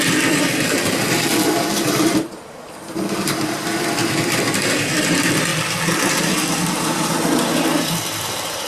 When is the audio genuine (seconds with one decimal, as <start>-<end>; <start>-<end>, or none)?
5.5-6.1